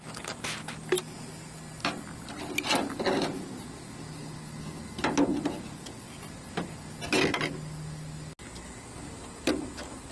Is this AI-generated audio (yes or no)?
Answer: no